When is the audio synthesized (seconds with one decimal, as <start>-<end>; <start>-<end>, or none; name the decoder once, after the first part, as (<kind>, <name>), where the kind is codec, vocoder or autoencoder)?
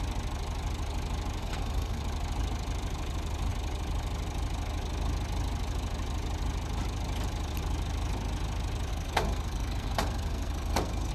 1.4-2.0 (codec, SNAC); 8.9-11.1